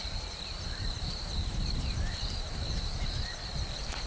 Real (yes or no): no